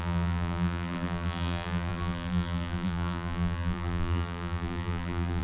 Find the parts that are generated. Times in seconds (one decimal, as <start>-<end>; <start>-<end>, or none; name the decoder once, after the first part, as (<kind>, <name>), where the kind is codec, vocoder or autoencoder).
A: 0.0-5.4 (vocoder, BigVGAN v2)